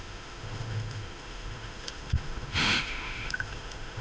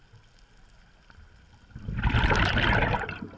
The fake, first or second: first